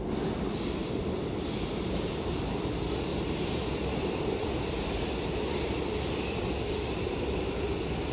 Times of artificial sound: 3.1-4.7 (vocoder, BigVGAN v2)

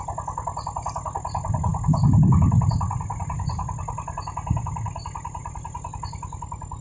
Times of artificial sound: none

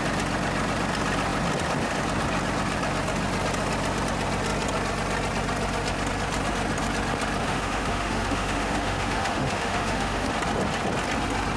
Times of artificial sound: 7.4-10.3 (autoencoder, DAC-VAE)

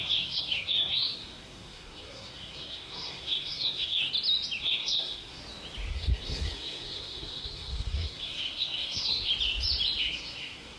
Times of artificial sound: 0.0-4.1 (codec, SNAC); 4.6-5.4; 5.9-9.3; 10.0-10.8

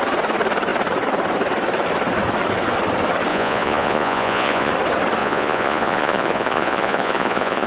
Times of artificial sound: 3.3-4.7 (vocoder, Vocos); 5.2-7.7

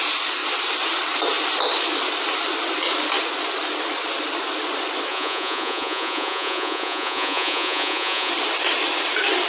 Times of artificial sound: 5.1-8.3 (vocoder, Vocos)